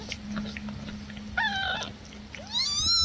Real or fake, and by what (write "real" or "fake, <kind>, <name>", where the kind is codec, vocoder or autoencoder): real